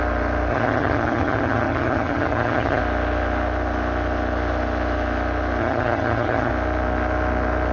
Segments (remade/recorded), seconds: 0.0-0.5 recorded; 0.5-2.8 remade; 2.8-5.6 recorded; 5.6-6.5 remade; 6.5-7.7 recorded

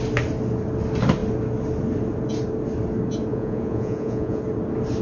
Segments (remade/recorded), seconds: 0.0-3.3 recorded; 3.3-4.4 remade; 4.4-5.0 recorded

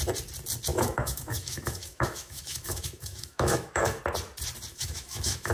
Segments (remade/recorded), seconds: 0.0-0.7 recorded; 0.7-4.0 remade; 4.0-4.7 recorded; 4.7-5.5 remade

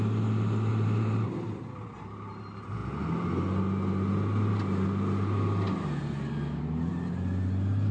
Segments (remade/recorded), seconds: 0.0-0.7 recorded; 0.7-1.3 remade; 1.3-7.9 recorded